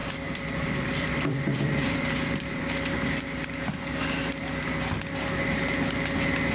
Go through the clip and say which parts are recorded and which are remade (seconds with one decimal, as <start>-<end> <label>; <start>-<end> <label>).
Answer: 0.0-2.6 remade; 2.6-6.5 recorded